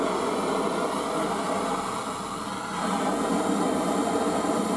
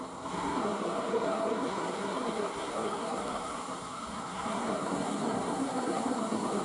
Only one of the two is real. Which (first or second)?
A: first